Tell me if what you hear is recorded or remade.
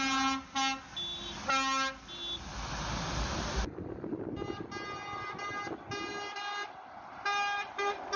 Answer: recorded